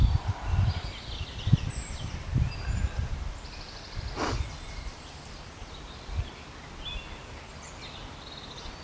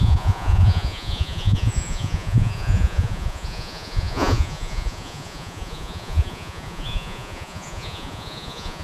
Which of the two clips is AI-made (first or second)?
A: second